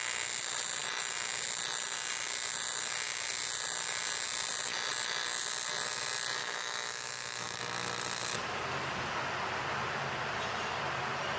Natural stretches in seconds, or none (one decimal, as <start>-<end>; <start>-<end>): 0.0-6.4; 7.6-11.4